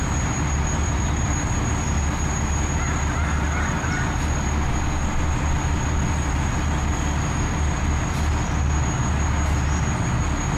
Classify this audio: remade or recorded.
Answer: recorded